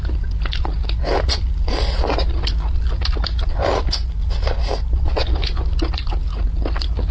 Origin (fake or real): real